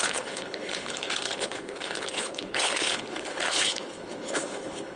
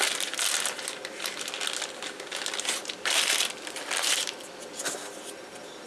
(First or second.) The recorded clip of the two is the second